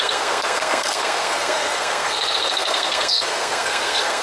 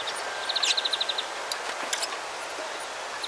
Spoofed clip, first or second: first